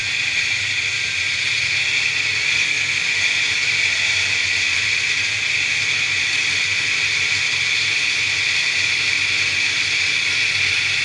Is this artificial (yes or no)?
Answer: yes